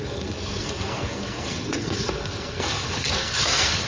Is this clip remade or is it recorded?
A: remade